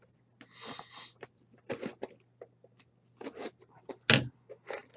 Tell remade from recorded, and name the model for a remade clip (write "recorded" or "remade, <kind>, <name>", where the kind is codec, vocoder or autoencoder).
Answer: recorded